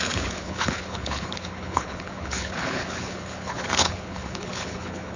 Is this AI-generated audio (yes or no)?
yes